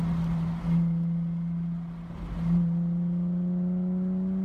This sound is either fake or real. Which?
real